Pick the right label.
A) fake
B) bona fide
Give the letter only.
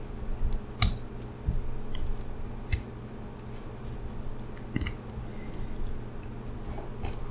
B